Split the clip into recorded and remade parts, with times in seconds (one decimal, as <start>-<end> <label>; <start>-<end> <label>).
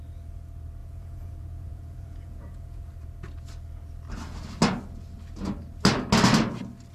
0.0-0.8 recorded; 0.8-2.9 remade; 2.9-6.9 recorded